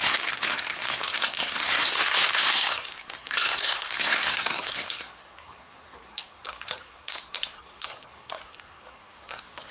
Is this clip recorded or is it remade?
remade